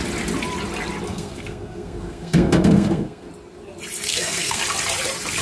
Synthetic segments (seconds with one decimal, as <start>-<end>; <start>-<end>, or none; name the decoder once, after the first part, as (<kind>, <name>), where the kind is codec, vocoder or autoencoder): 1.1-3.3 (codec, SNAC); 4.1-4.6